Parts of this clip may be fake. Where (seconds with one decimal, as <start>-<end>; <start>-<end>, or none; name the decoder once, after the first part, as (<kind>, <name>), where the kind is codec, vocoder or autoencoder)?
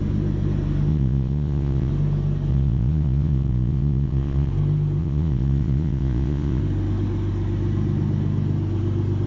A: 0.9-1.9 (vocoder, Vocos); 2.5-4.5; 5.0-6.6